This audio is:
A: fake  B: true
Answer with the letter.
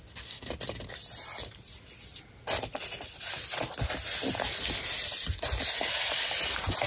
B